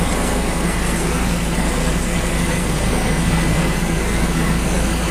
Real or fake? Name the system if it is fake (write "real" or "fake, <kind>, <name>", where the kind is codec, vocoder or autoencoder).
fake, codec, SNAC